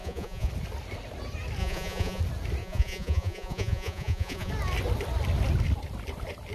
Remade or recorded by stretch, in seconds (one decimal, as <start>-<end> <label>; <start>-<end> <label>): 0.0-0.5 remade; 0.5-1.6 recorded; 1.6-2.2 remade; 2.2-2.6 recorded; 2.6-4.5 remade; 4.5-6.5 recorded